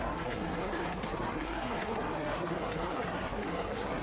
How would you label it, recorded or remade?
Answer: remade